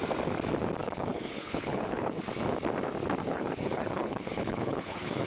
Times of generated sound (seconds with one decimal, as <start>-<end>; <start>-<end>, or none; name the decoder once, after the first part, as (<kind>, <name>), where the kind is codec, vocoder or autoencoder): 0.8-2.2 (codec, HILCodec); 3.2-5.3